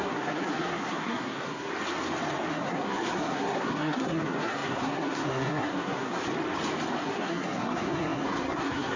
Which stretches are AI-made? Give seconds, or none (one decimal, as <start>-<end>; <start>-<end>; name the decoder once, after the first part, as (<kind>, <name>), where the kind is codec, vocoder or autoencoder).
0.0-1.7 (codec, SNAC); 2.5-6.2; 7.0-9.0